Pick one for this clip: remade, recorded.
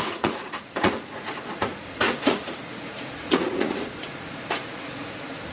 remade